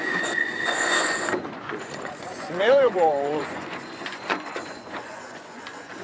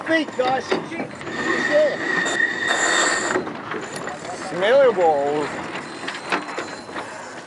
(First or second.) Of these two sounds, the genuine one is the second